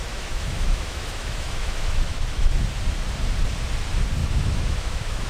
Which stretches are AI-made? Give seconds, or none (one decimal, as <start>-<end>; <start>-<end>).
0.0-2.5; 4.2-5.3